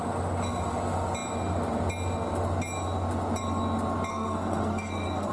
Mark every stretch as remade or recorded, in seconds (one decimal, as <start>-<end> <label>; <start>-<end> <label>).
0.0-4.1 recorded; 4.1-5.3 remade